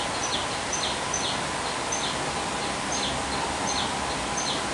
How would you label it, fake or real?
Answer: real